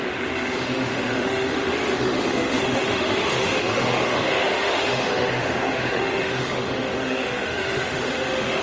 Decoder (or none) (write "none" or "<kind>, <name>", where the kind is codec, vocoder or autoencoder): autoencoder, DAC-VAE